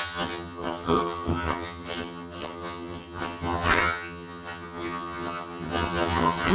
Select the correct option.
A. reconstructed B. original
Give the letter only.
A